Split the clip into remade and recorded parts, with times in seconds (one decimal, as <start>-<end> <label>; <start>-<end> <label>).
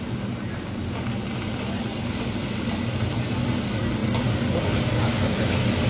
0.0-5.9 recorded